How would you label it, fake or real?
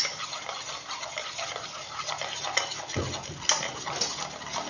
real